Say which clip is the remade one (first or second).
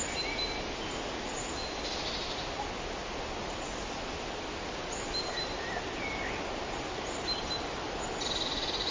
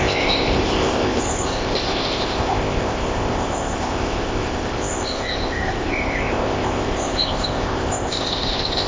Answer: second